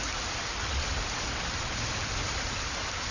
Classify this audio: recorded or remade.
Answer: recorded